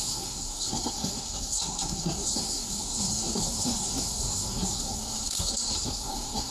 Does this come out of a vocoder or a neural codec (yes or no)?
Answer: yes